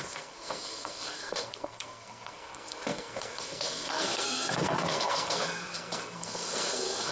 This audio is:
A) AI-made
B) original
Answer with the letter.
A